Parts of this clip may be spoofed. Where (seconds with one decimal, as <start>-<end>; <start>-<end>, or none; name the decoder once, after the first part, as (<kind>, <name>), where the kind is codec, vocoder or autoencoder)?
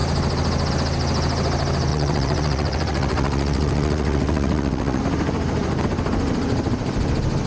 1.9-5.0 (vocoder, WaveNeXt)